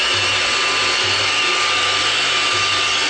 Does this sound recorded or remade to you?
recorded